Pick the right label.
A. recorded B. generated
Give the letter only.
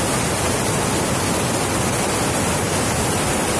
A